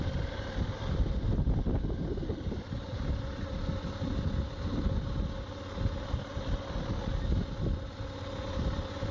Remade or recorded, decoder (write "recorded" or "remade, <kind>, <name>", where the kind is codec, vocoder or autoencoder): recorded